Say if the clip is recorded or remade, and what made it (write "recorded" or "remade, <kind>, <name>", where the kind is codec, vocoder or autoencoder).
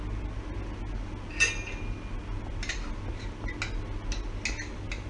recorded